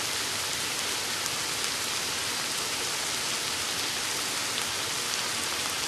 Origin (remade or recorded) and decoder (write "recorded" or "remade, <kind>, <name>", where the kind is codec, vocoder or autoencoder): recorded